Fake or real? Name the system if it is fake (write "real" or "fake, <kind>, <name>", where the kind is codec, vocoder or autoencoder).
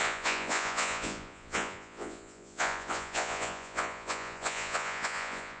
fake, vocoder, Vocos